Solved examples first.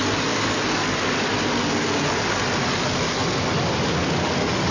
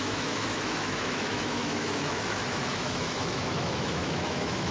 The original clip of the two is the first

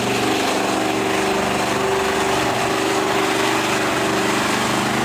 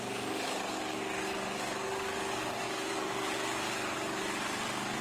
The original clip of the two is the first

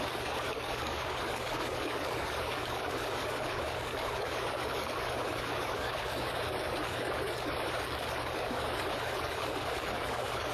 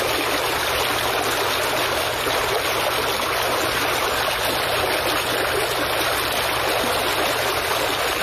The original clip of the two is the second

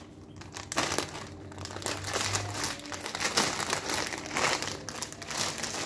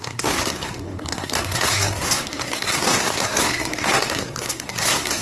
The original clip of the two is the first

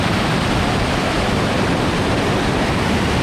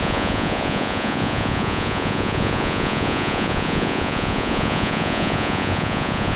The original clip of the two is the first